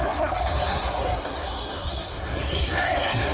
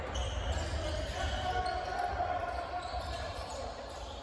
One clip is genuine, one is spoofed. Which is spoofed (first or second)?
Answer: first